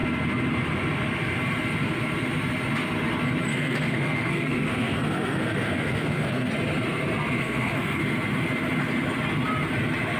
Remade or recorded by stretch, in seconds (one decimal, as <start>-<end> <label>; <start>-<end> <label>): 0.0-3.5 recorded; 3.5-6.5 remade; 6.5-7.4 recorded; 7.4-8.0 remade; 8.0-10.2 recorded